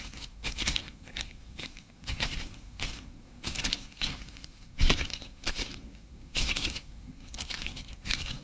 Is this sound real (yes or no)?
no